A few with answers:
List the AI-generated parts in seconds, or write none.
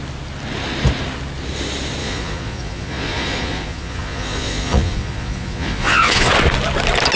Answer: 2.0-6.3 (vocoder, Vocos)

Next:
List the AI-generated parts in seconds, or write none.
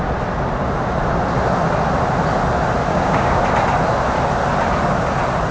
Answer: 2.9-3.4 (codec, DAC)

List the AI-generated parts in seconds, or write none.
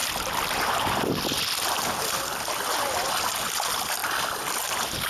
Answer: none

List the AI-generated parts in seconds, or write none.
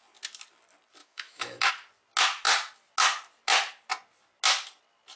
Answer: 1.0-1.7 (autoencoder, DAC-VAE)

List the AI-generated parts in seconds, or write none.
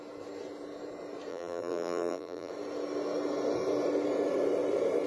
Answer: 1.3-2.5 (vocoder, BigVGAN v2)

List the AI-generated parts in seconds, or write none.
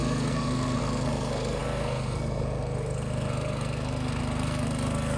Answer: 0.0-5.2 (codec, SNAC)